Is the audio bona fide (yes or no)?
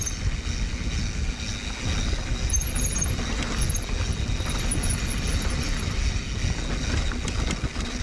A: yes